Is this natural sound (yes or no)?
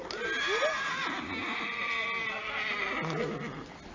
yes